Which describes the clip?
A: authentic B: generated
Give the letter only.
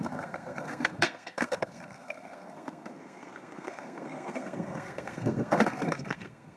B